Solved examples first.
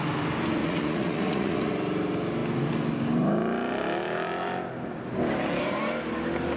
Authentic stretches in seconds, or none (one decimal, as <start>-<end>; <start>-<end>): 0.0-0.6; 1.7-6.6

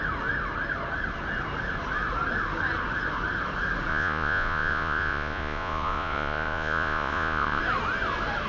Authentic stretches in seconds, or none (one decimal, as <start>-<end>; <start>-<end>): 0.0-3.9; 7.6-8.5

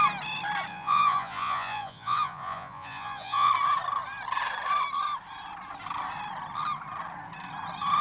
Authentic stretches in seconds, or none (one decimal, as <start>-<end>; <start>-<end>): 0.0-0.7; 3.5-8.0

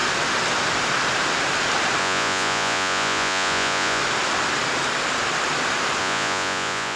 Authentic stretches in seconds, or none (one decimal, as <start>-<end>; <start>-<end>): 0.0-2.0; 4.0-6.0